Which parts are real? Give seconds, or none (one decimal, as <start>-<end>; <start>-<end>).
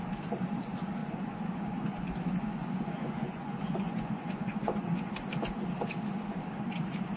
0.0-1.0; 5.3-7.2